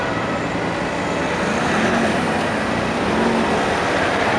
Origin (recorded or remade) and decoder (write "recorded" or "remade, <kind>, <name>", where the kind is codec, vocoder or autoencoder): recorded